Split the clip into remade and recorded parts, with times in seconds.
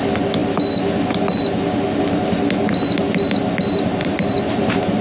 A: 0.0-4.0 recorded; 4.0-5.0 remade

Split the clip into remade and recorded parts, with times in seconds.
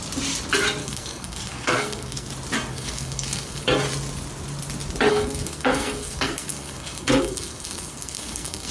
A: 0.0-0.8 recorded; 0.8-2.3 remade; 2.3-2.7 recorded; 2.7-3.6 remade; 3.6-5.1 recorded; 5.1-8.7 remade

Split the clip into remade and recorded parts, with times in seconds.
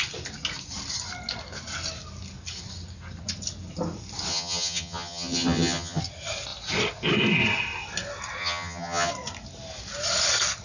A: 0.0-4.3 recorded; 4.3-6.0 remade; 6.0-8.4 recorded; 8.4-9.1 remade; 9.1-10.6 recorded